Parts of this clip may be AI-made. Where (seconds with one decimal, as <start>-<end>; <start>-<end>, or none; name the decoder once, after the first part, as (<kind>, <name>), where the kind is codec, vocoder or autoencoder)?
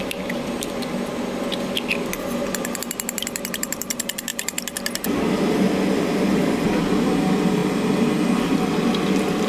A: none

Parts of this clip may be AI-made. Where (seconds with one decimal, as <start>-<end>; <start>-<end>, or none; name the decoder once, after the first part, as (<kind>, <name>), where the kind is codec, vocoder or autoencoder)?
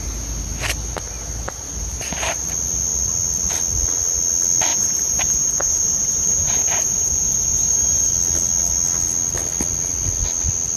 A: 1.7-2.3 (vocoder, BigVGAN v2); 4.7-8.1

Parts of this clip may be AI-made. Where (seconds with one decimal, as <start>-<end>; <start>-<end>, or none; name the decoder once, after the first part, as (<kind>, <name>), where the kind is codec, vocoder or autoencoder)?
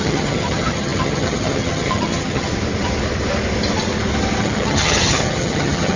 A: 0.0-2.5 (vocoder, HiFi-GAN); 4.4-6.0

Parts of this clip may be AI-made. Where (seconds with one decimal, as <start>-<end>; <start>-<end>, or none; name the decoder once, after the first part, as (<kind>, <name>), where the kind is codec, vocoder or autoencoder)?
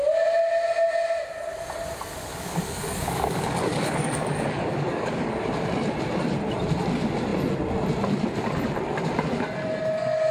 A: 2.1-5.3 (codec, DAC)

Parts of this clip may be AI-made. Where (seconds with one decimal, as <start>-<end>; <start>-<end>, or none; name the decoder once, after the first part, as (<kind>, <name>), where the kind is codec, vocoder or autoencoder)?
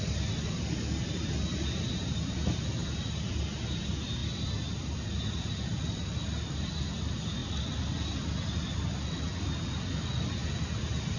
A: none